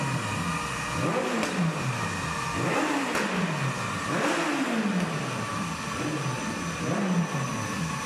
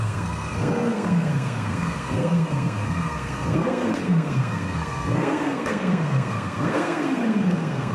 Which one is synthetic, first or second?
second